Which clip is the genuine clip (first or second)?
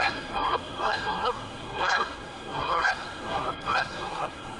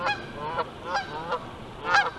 second